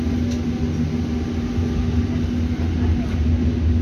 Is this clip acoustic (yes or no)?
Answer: yes